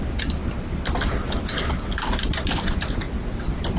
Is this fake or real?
real